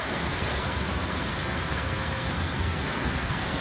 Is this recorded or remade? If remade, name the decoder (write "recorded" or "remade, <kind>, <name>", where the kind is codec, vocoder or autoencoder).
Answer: remade, codec, SNAC